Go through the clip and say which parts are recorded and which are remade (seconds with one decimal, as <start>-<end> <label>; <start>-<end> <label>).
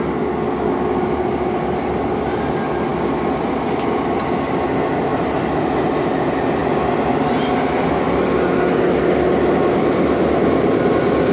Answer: 0.0-11.3 recorded